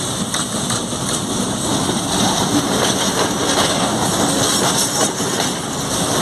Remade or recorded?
recorded